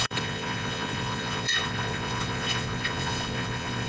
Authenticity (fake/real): fake